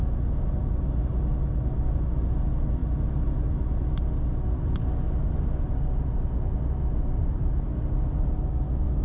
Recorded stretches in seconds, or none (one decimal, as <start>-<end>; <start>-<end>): 0.0-9.0